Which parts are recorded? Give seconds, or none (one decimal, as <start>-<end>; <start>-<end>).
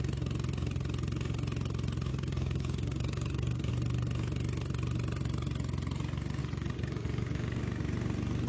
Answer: 0.0-2.1; 3.7-6.4; 7.6-8.5